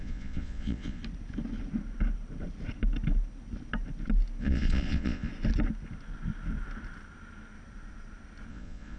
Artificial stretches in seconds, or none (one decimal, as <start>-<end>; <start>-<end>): 0.0-1.0; 4.4-5.3; 8.5-9.0